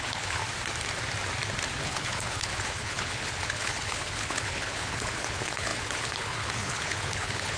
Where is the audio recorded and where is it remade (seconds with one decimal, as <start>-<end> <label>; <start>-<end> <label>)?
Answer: 0.0-0.4 remade; 0.4-1.8 recorded; 1.8-7.6 remade